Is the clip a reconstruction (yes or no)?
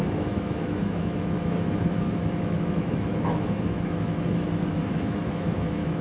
yes